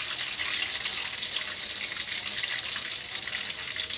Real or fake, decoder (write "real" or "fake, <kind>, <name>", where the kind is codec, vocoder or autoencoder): real